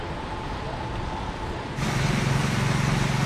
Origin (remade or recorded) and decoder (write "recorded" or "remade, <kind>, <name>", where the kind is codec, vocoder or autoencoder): recorded